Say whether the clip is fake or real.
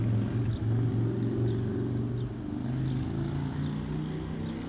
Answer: real